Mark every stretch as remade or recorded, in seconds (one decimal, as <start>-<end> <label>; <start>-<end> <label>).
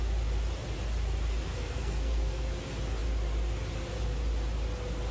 0.0-1.5 recorded; 1.5-2.5 remade; 2.5-5.1 recorded